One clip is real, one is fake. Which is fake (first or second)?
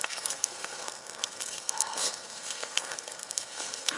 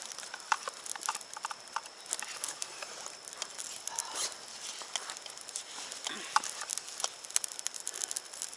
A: first